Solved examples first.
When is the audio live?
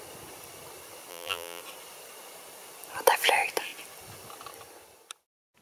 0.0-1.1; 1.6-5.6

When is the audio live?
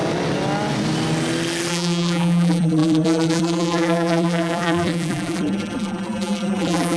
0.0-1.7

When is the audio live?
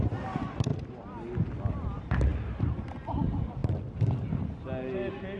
0.0-0.7; 1.4-5.4